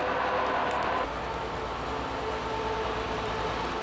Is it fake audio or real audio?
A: real